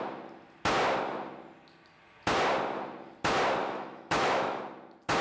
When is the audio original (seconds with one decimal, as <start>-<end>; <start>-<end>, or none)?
0.0-3.6; 4.6-5.2